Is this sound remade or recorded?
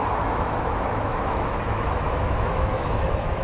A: remade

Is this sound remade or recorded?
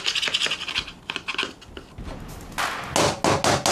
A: recorded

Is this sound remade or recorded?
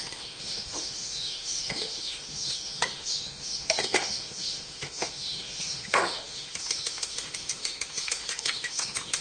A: remade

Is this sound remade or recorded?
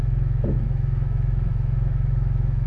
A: remade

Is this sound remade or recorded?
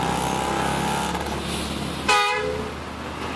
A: recorded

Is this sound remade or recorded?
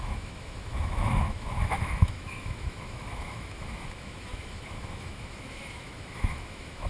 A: remade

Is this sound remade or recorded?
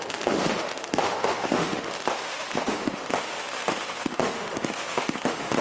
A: remade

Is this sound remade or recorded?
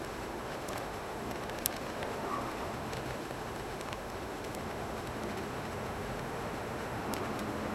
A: remade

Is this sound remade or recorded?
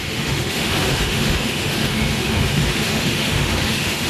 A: remade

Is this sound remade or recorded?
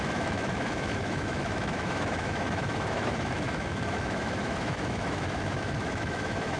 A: remade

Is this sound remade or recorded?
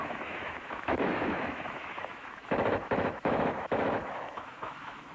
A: remade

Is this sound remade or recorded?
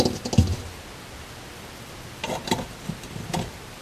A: recorded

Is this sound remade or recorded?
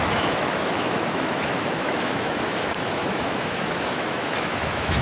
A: remade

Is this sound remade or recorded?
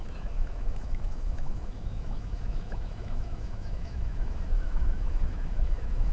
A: remade